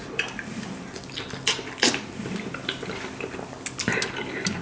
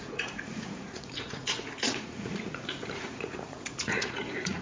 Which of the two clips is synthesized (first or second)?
second